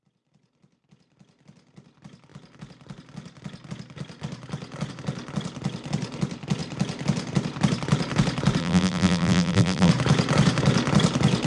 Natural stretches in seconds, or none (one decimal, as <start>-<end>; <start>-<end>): 0.0-8.6; 9.9-11.5